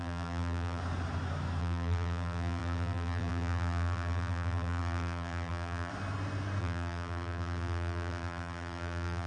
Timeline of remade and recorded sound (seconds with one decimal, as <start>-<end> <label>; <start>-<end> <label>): 0.0-0.8 remade; 0.8-1.6 recorded; 1.6-5.9 remade; 5.9-6.6 recorded; 6.6-9.3 remade